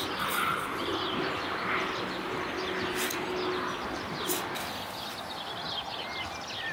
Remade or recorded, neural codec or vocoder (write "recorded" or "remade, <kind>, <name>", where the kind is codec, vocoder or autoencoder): recorded